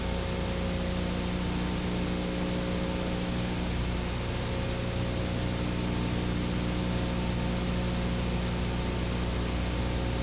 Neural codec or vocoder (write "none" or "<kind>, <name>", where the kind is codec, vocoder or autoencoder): none